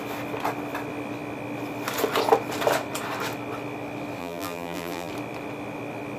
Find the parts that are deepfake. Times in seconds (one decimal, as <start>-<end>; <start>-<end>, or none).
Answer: 4.2-5.1